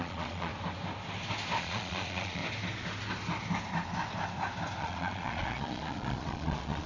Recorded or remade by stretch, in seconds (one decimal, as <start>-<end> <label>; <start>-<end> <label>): 0.0-0.5 remade; 0.5-1.6 recorded; 1.6-2.4 remade; 2.4-4.8 recorded; 4.8-6.9 remade